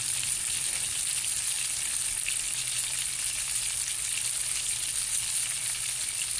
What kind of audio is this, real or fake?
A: real